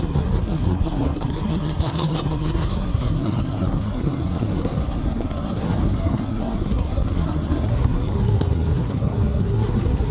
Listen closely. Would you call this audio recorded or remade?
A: remade